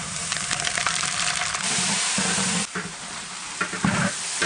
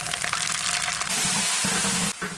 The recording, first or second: second